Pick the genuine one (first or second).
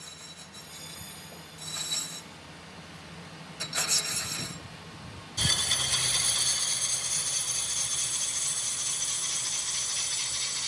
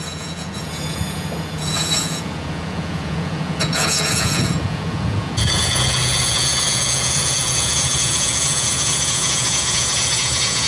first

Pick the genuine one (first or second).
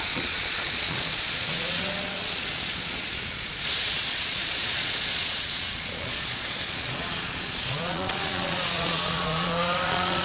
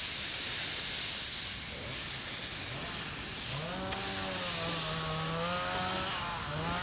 second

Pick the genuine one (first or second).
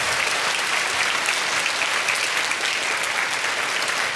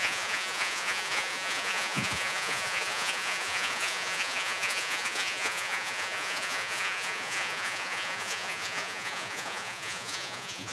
first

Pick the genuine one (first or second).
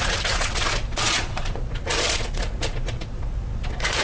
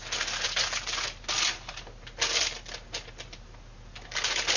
second